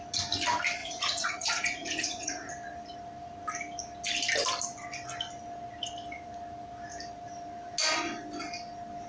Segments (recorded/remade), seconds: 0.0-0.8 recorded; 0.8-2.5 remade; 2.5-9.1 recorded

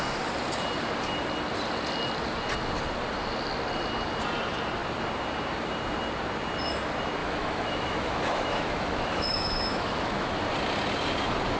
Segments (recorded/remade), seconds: 0.0-7.2 recorded; 7.2-10.4 remade; 10.4-11.6 recorded